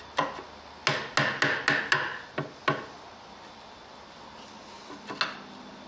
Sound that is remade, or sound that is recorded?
recorded